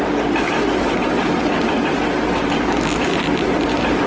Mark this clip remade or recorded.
recorded